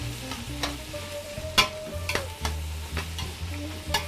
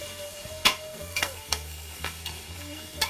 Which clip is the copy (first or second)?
second